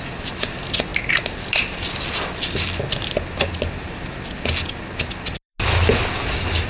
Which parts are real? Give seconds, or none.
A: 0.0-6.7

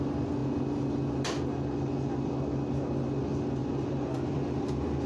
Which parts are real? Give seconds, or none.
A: 0.0-3.6; 4.6-5.1

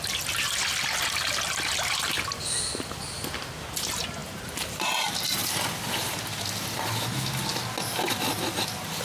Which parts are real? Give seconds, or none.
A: 0.0-9.0